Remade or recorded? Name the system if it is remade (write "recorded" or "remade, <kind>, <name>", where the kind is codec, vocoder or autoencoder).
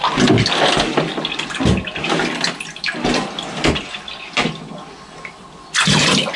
recorded